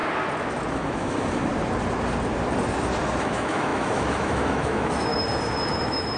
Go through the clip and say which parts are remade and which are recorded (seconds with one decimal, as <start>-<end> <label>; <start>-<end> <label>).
0.0-0.7 recorded; 0.7-1.5 remade; 1.5-3.2 recorded; 3.2-5.1 remade; 5.1-5.7 recorded; 5.7-6.2 remade